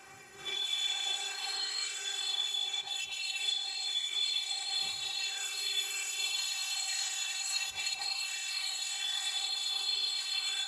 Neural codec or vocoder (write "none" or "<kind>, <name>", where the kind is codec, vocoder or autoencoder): codec, SNAC